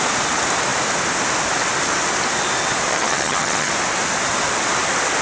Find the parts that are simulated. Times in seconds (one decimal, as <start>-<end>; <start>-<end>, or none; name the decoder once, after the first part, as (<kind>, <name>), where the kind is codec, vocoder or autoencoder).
2.9-3.7 (vocoder, HiFi-GAN)